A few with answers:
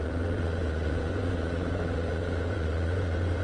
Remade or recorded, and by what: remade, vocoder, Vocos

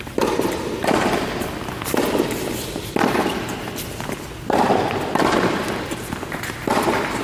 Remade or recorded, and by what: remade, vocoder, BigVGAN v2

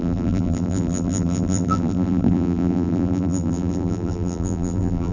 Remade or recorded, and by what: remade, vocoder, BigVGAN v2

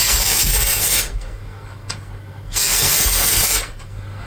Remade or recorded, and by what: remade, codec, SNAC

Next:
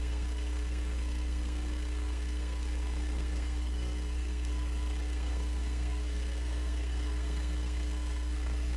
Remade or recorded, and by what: remade, codec, SNAC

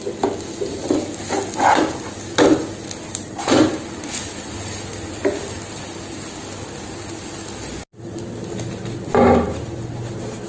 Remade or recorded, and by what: recorded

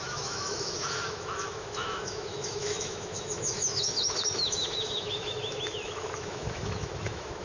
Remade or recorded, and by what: remade, autoencoder, DAC-VAE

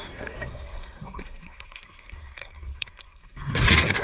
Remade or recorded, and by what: remade, codec, SNAC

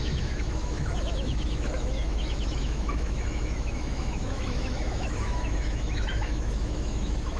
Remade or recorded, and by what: remade, autoencoder, DAC-VAE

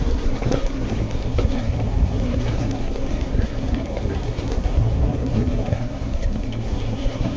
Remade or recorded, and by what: remade, codec, SNAC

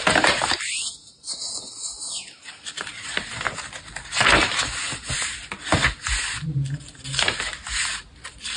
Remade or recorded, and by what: recorded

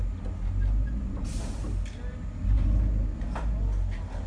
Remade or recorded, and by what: recorded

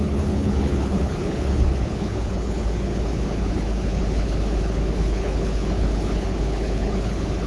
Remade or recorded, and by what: remade, codec, HILCodec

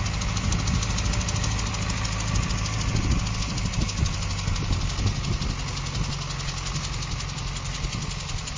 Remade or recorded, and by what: recorded